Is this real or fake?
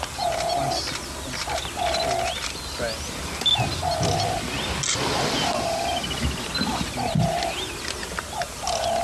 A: real